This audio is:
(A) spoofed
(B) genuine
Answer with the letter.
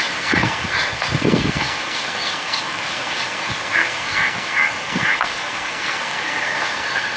A